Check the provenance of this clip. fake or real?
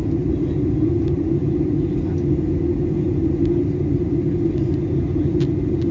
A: real